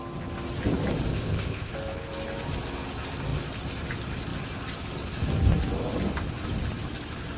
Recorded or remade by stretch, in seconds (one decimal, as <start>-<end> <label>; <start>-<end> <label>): 0.0-1.1 recorded; 1.1-1.7 remade; 1.7-7.4 recorded